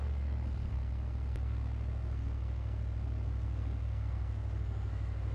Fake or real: fake